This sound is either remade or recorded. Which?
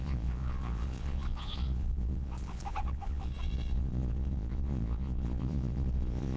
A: remade